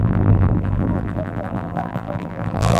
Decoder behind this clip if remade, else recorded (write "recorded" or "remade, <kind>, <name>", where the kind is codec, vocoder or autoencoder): remade, vocoder, BigVGAN v2